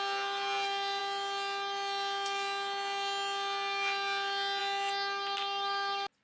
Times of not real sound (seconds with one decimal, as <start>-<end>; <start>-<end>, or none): none